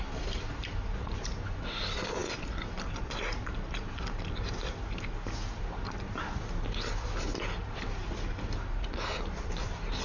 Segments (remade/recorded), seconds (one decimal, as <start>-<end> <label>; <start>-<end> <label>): 0.0-10.0 recorded